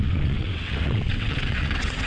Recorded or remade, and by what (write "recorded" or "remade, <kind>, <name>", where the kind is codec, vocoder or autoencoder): remade, vocoder, WaveNeXt